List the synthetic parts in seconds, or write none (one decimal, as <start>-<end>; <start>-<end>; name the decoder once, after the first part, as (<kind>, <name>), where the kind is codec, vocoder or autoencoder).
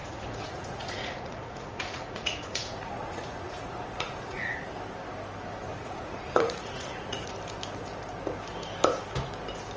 0.0-4.7 (vocoder, Vocos); 5.7-7.3